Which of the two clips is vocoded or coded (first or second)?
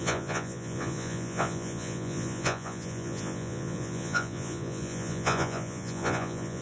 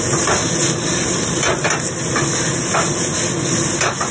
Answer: first